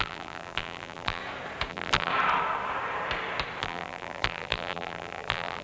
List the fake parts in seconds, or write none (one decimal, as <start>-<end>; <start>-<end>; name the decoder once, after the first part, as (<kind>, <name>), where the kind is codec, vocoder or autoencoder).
0.0-1.2 (vocoder, BigVGAN v2); 1.7-2.1; 3.6-5.6